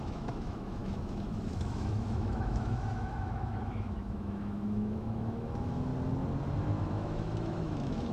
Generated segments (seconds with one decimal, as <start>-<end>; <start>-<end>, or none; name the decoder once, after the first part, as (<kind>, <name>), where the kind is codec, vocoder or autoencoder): 0.0-5.9 (autoencoder, DAC-VAE); 6.8-8.1